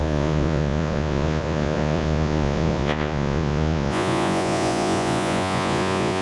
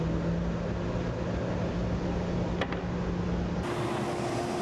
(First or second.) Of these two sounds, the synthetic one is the first